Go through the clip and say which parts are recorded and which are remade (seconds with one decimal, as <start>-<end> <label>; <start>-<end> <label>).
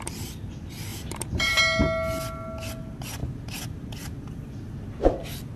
0.0-0.9 recorded; 0.9-1.6 remade; 1.6-3.2 recorded; 3.2-4.7 remade; 4.7-5.6 recorded